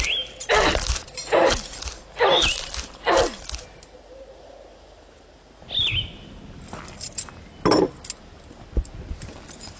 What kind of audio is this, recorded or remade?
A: recorded